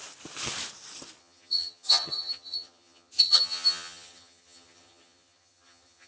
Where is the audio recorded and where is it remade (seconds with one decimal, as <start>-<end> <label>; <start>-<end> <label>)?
0.0-1.2 recorded; 1.2-6.1 remade